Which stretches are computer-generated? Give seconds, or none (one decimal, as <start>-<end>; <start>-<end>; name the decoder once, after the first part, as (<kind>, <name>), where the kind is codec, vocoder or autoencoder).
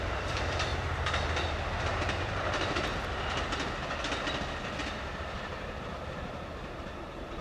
0.0-0.7 (vocoder, BigVGAN v2); 1.8-2.9; 4.9-7.4